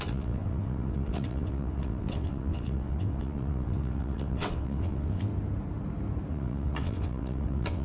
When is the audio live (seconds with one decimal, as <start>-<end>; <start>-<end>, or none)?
5.3-6.3